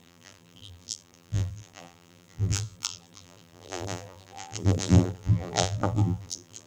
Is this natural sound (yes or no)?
no